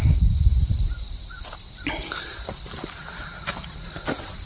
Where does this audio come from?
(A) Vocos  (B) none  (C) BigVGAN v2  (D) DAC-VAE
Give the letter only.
B